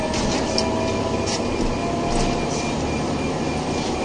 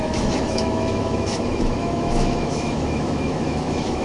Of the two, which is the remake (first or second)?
second